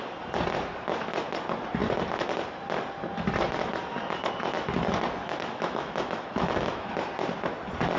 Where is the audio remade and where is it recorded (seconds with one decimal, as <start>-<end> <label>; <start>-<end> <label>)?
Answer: 0.0-5.2 recorded; 5.2-6.9 remade; 6.9-8.0 recorded